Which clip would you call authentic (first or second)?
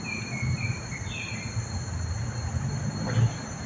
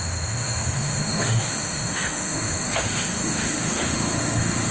first